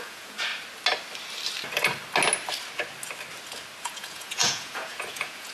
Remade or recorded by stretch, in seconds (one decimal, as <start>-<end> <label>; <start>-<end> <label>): 0.0-0.5 remade; 0.5-3.8 recorded; 3.8-5.5 remade